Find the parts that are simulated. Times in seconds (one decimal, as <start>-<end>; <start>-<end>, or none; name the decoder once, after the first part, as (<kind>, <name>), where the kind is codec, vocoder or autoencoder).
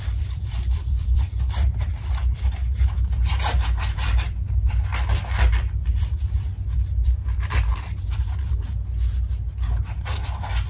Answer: 0.0-2.6 (vocoder, BigVGAN v2); 3.1-7.7